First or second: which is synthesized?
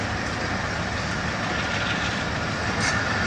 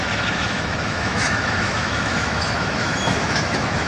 second